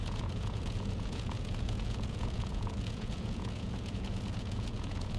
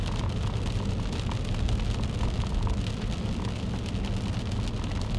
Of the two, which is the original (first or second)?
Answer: second